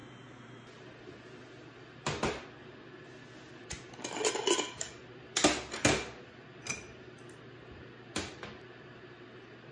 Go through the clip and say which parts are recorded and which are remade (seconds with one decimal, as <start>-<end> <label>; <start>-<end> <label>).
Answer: 0.0-9.7 recorded